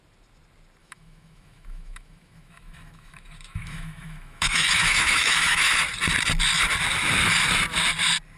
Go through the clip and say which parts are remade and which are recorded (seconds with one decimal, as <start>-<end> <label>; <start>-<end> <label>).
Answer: 0.0-0.8 recorded; 0.8-5.8 remade; 5.8-8.4 recorded